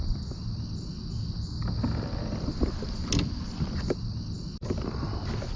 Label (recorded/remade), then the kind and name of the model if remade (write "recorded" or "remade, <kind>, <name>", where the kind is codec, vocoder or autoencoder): recorded